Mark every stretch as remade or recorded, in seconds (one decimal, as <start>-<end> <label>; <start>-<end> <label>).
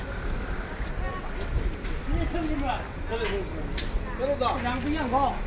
0.0-5.5 recorded